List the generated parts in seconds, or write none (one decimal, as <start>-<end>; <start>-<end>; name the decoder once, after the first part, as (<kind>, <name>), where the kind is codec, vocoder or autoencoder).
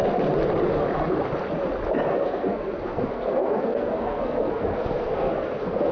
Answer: 2.1-5.9 (codec, SNAC)